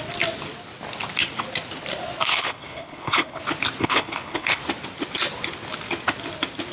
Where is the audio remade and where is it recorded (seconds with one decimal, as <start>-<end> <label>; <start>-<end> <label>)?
0.0-2.3 recorded; 2.3-3.4 remade; 3.4-3.8 recorded; 3.8-4.6 remade; 4.6-6.7 recorded